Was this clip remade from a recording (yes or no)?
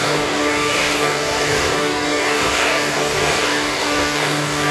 yes